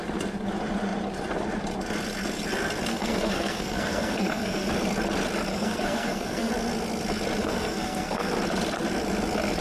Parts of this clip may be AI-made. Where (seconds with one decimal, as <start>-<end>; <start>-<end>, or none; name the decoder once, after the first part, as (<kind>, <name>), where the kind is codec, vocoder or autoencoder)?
2.9-4.7 (codec, SNAC); 5.5-6.5; 7.4-8.3